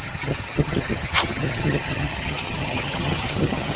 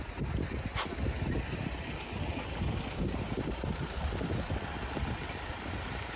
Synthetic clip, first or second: first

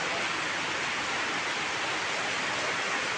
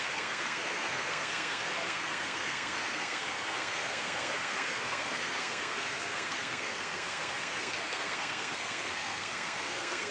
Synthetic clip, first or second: second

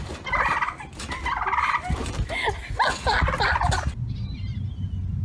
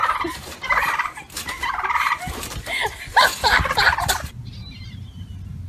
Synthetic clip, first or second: second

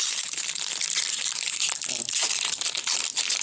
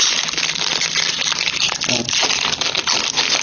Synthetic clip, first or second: first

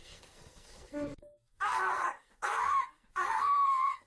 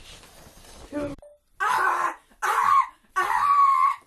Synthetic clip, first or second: first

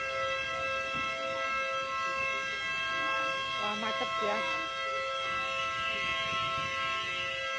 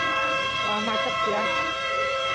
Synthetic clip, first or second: second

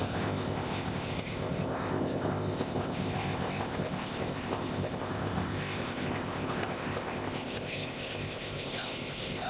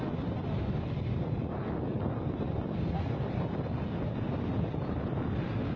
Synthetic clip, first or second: first